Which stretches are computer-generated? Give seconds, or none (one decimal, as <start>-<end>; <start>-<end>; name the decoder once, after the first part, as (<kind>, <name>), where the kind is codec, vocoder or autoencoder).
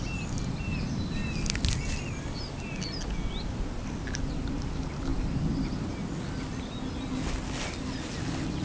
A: none